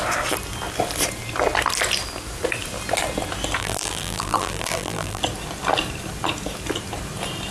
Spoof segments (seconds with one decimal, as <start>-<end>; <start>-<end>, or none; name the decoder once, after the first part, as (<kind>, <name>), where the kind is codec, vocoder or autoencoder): 3.6-5.2 (vocoder, BigVGAN v2)